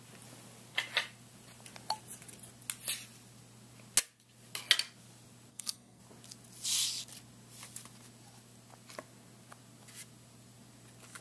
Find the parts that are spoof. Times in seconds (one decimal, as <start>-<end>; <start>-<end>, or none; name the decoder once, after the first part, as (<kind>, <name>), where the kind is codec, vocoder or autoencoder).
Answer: 5.5-6.0 (codec, SNAC)